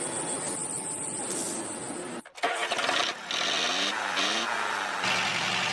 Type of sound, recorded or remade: recorded